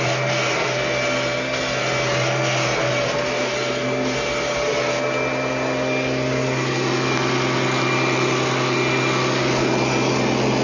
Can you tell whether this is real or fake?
real